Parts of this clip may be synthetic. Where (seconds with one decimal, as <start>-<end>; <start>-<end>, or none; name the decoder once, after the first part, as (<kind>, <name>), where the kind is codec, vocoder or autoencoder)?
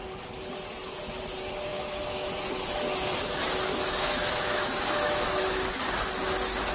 1.7-2.3 (autoencoder, DAC-VAE); 3.7-5.7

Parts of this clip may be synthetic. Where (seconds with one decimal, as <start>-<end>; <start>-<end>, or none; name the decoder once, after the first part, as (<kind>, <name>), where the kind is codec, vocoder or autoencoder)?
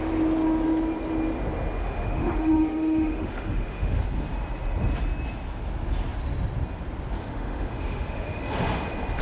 1.8-4.0 (autoencoder, DAC-VAE); 7.2-8.4